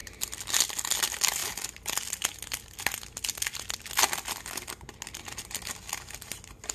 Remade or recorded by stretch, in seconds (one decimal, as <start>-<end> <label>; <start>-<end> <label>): 0.0-6.7 recorded